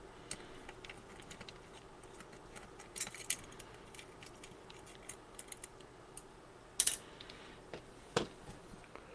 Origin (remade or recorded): recorded